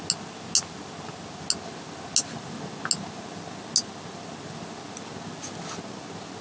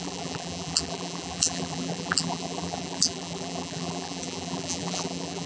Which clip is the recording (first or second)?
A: first